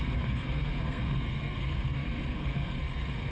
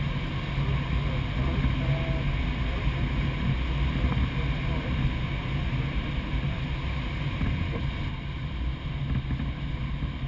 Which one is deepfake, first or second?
first